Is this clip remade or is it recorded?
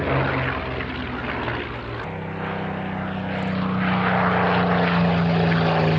recorded